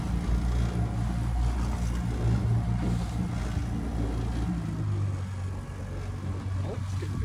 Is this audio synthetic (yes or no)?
no